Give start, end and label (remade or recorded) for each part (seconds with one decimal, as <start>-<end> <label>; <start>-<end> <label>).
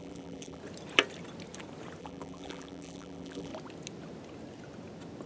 0.0-0.6 remade; 0.6-2.0 recorded; 2.0-3.5 remade; 3.5-5.3 recorded